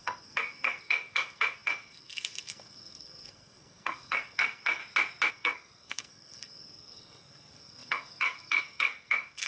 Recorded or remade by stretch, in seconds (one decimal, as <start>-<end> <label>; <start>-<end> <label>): 0.0-4.8 remade; 4.8-5.3 recorded; 5.3-9.5 remade